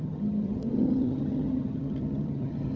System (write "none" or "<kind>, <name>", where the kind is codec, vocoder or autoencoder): vocoder, HiFi-GAN